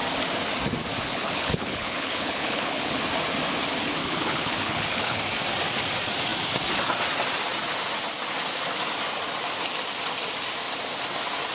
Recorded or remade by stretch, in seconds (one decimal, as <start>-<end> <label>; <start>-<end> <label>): 0.0-1.1 recorded; 1.1-3.0 remade; 3.0-4.0 recorded; 4.0-5.2 remade; 5.2-11.5 recorded